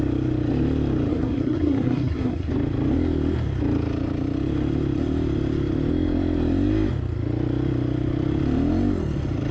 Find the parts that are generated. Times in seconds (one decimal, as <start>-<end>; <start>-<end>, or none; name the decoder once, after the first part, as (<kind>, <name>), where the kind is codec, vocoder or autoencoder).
1.1-2.5 (codec, SNAC)